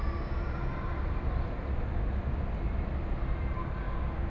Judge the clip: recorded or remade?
recorded